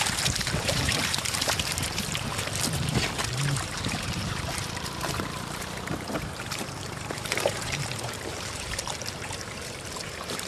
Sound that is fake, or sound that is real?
fake